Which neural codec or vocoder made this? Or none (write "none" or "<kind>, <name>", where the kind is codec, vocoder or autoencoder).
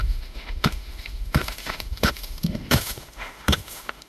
autoencoder, DAC-VAE